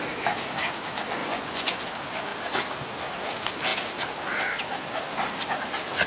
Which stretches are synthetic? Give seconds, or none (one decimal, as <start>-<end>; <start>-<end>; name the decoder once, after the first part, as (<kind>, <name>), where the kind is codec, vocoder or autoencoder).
1.2-1.8 (vocoder, Vocos)

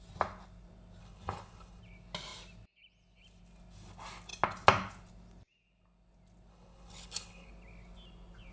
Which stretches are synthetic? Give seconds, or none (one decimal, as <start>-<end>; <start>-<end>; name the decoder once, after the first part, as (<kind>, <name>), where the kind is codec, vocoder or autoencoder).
1.0-1.8 (codec, HILCodec); 6.5-7.5

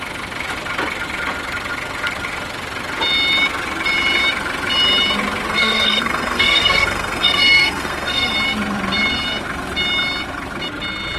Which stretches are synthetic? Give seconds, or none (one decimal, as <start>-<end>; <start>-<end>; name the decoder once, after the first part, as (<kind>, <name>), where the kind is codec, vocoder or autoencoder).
5.5-8.3 (codec, SNAC)